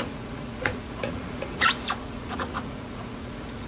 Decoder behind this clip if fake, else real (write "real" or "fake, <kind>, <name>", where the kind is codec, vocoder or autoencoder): fake, vocoder, Vocos